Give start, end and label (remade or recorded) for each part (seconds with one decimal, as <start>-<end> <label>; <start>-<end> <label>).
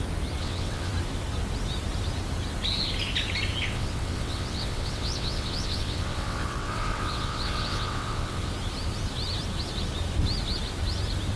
0.0-0.4 recorded; 0.4-0.9 remade; 0.9-3.6 recorded; 3.6-8.5 remade; 8.5-11.4 recorded